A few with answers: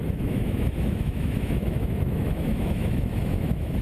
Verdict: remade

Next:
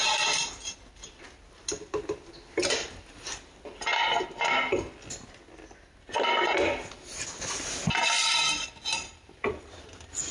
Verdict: recorded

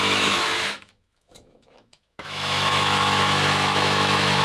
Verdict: remade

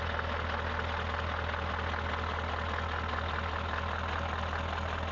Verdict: recorded